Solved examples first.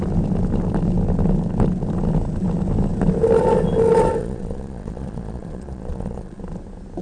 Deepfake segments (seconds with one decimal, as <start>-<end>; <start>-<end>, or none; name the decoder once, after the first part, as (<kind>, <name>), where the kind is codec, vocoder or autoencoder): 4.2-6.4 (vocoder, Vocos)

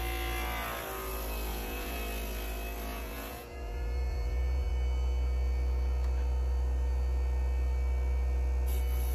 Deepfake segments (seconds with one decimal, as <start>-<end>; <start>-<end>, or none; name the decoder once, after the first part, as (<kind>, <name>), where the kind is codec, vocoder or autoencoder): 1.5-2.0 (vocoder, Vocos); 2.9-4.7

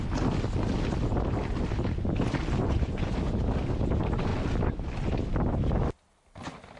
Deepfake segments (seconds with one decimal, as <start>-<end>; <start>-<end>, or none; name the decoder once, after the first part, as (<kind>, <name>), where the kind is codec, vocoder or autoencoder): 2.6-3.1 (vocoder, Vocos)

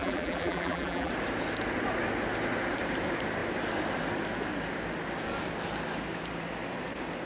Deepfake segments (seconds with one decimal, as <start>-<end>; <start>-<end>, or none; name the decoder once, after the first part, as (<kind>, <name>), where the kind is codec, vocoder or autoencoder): 0.0-1.1 (vocoder, BigVGAN v2)

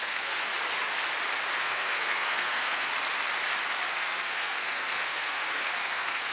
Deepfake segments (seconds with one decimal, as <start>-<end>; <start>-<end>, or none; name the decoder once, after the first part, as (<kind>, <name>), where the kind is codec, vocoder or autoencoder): 0.0-0.5 (codec, SNAC); 1.5-2.9; 3.9-6.3

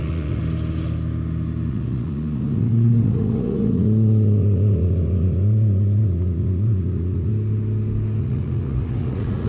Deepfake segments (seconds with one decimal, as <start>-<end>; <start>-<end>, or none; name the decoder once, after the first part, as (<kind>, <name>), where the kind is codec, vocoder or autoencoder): 0.0-0.4 (vocoder, Vocos); 1.7-7.3; 8.2-9.5